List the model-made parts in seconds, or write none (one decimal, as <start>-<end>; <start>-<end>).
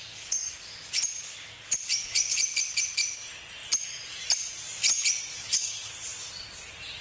5.4-5.9